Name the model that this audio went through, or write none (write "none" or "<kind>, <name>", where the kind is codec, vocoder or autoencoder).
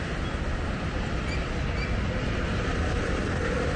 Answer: none